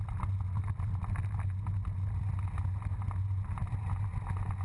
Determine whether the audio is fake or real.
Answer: real